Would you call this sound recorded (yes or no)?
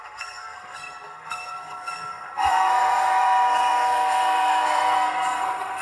no